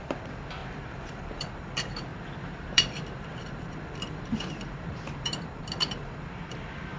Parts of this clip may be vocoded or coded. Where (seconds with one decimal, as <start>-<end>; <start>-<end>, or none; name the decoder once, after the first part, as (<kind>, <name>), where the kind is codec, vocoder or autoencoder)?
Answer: 0.0-7.0 (vocoder, BigVGAN v2)